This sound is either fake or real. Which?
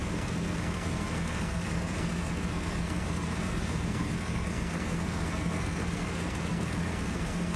fake